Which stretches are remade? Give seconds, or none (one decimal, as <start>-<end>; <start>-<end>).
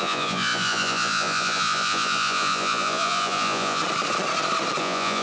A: 0.0-3.8; 4.8-5.2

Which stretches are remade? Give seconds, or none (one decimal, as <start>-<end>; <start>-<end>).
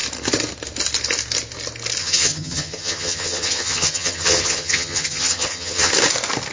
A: 2.0-5.9